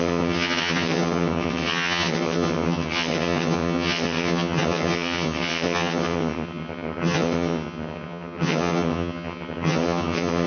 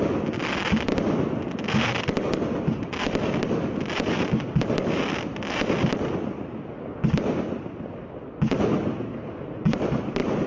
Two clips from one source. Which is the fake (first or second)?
first